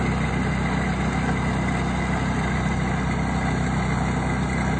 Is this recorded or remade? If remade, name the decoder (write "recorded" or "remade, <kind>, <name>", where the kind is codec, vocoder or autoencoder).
recorded